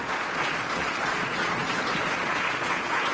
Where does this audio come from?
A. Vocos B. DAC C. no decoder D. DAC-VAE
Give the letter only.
A